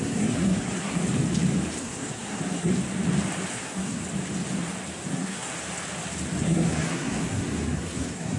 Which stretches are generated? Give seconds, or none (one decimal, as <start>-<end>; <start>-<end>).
0.0-1.0; 1.8-2.7; 3.5-4.0; 5.1-5.5; 6.4-8.4